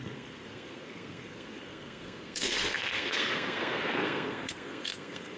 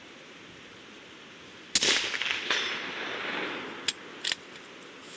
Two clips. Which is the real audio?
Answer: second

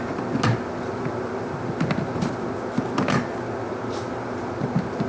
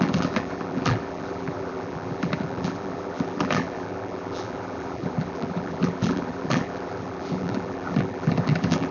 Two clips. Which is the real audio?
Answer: first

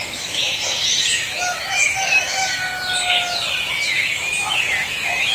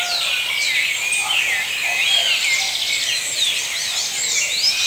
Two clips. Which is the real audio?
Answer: second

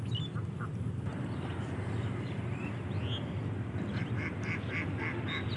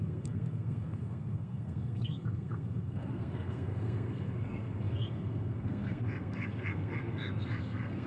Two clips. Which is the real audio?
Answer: first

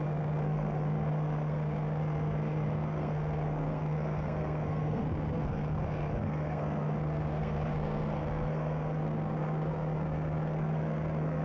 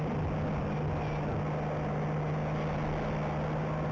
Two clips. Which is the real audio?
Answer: second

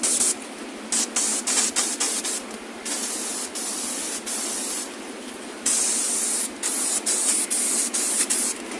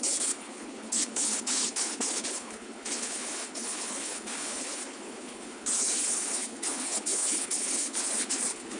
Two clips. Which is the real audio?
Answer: first